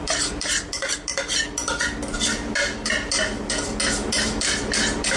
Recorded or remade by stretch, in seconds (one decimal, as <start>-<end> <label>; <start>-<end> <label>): 0.0-5.2 recorded